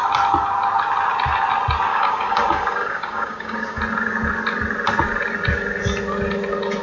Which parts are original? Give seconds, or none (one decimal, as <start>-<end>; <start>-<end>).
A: 0.0-1.9; 3.8-6.8